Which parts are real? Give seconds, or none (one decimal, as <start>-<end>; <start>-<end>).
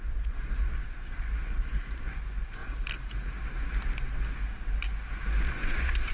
2.6-5.5